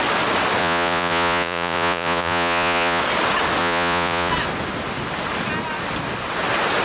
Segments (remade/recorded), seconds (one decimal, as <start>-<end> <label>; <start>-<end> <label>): 0.0-0.6 recorded; 0.6-3.0 remade; 3.0-3.6 recorded; 3.6-4.3 remade; 4.3-6.8 recorded